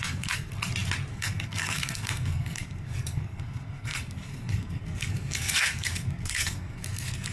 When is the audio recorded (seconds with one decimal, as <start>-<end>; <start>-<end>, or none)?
0.5-1.1